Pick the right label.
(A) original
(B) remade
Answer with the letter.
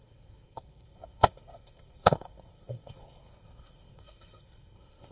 B